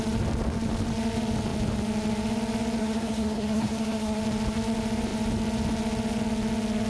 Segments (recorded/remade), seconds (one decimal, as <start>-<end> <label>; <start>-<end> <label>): 0.0-2.8 recorded; 2.8-4.2 remade; 4.2-6.9 recorded